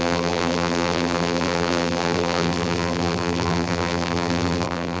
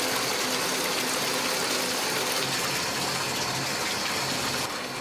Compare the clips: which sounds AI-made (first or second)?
first